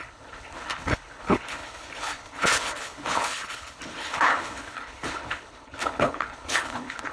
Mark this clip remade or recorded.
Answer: remade